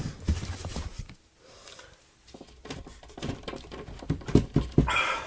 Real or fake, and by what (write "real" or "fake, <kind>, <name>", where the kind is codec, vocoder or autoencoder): real